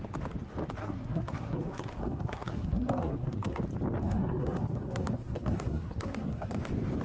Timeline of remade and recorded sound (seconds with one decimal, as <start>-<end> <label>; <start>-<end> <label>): 0.0-0.8 recorded; 0.8-3.6 remade; 3.6-4.0 recorded; 4.0-6.6 remade; 6.6-7.0 recorded